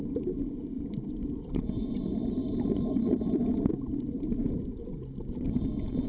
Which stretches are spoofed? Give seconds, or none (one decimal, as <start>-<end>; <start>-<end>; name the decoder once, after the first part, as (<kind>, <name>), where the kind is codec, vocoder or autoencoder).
0.0-2.2 (vocoder, Vocos); 3.4-6.1